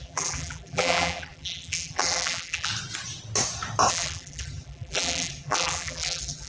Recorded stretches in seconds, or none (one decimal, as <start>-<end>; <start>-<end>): 2.7-3.9